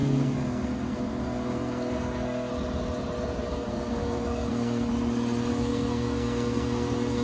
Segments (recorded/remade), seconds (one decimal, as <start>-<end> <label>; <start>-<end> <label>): 0.0-2.5 remade; 2.5-3.5 recorded; 3.5-4.9 remade; 4.9-5.5 recorded; 5.5-7.2 remade